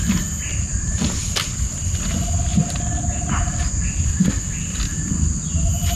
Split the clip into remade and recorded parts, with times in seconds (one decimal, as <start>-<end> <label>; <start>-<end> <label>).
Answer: 0.0-0.5 recorded; 0.5-1.4 remade; 1.4-6.0 recorded